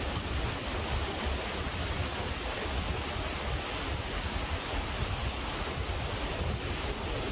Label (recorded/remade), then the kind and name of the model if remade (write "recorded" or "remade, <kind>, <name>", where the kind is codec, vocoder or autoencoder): recorded